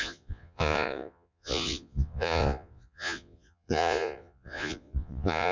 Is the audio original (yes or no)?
no